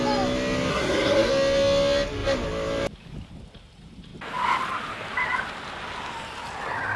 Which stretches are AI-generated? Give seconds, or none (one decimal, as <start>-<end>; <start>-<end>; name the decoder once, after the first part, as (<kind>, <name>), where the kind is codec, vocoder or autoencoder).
0.7-1.3 (codec, SNAC)